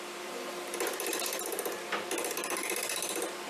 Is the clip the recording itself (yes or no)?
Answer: yes